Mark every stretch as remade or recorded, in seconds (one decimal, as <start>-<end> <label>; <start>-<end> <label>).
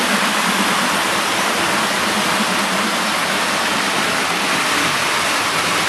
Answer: 0.0-5.9 recorded